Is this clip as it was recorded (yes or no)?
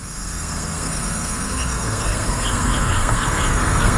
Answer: no